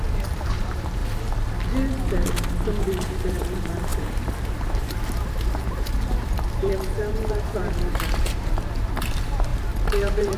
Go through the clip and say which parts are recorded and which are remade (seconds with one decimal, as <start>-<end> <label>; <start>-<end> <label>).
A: 0.0-1.0 remade; 1.0-2.8 recorded; 2.8-10.4 remade